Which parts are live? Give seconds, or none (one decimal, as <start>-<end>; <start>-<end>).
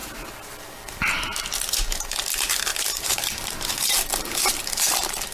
0.0-2.7; 3.9-5.3